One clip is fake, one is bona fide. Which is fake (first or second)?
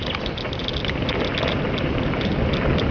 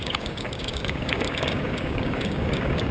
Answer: second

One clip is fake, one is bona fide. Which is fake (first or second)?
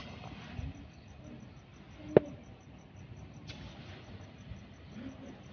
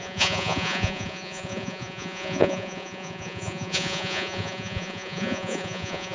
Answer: second